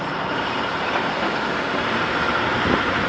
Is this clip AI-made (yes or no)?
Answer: no